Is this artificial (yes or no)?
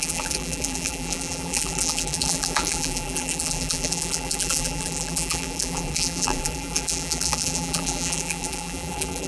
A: yes